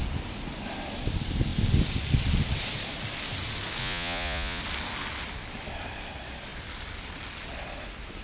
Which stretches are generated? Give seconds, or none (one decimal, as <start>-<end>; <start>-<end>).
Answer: 3.8-4.6